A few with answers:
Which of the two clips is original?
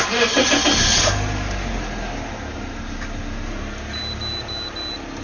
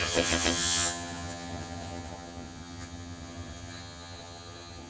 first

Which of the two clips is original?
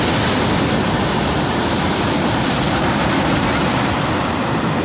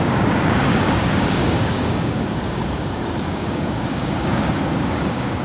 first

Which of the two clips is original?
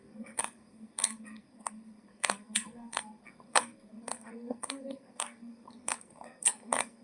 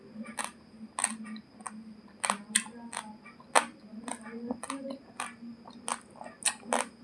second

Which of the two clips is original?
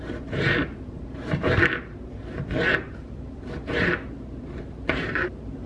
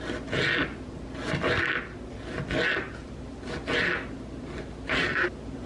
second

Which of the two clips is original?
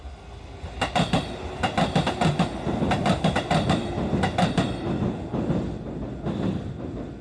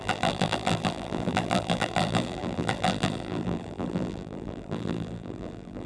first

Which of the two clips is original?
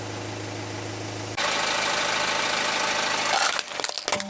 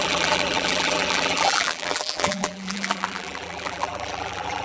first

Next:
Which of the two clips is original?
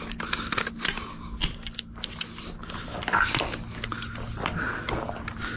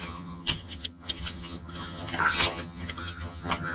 first